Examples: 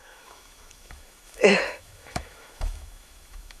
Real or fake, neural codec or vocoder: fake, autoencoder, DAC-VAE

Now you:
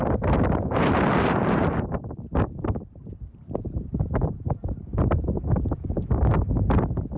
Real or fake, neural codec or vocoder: fake, vocoder, BigVGAN v2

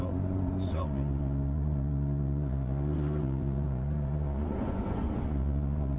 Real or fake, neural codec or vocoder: fake, vocoder, Vocos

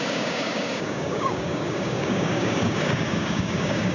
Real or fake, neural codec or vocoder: fake, codec, DAC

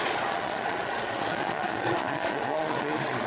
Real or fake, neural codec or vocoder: fake, vocoder, Vocos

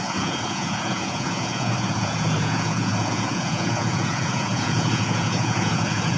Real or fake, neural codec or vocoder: fake, vocoder, Vocos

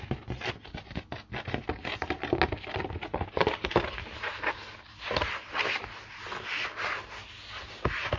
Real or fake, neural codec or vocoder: real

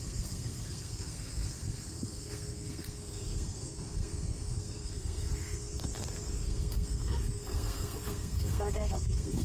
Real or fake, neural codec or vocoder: fake, codec, SNAC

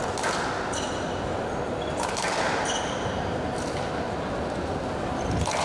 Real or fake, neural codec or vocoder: real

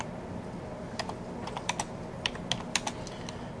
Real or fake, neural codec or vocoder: real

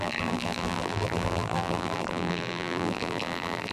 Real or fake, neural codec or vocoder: fake, vocoder, BigVGAN v2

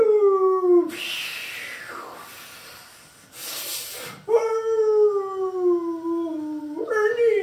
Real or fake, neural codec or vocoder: real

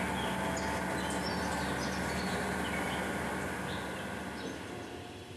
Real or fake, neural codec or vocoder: real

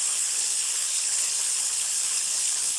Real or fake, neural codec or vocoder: fake, codec, HILCodec